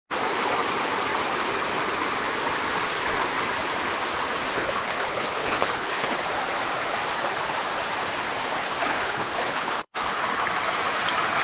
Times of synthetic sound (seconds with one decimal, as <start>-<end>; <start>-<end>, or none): 4.5-6.2; 8.8-10.2